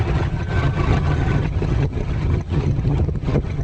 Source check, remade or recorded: remade